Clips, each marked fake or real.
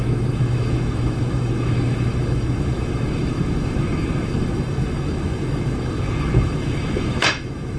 fake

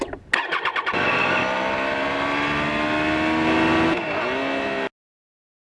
real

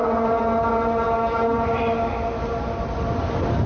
real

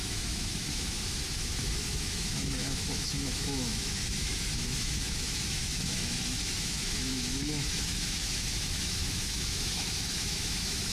fake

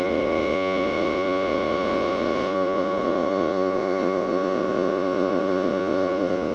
fake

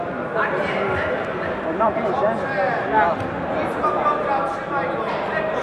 real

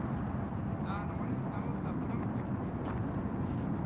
real